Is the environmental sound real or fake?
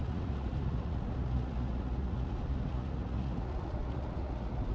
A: fake